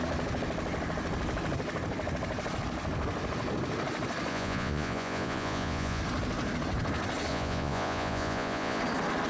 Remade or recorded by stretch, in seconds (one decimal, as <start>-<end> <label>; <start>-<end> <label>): 0.0-4.3 recorded; 4.3-6.0 remade; 6.0-7.3 recorded; 7.3-8.8 remade; 8.8-9.3 recorded